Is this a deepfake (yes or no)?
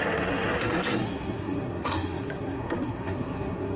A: yes